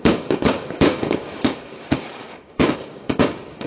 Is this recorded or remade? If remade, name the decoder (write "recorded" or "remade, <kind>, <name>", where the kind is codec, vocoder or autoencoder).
remade, codec, DAC